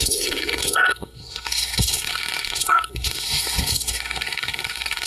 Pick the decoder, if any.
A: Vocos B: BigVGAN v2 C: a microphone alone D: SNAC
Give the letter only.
D